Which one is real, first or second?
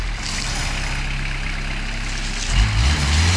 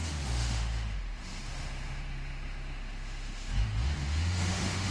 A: first